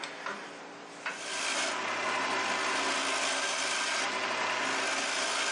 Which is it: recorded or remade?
recorded